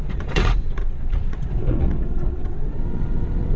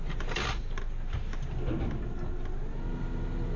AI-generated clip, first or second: first